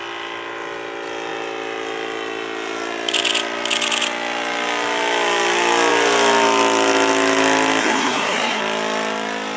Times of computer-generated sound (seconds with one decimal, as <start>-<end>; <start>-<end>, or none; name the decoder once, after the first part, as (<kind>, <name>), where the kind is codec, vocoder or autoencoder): 7.8-8.6 (codec, SNAC)